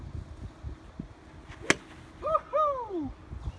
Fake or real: real